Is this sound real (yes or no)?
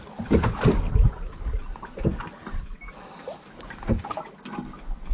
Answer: yes